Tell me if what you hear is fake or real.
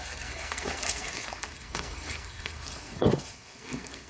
fake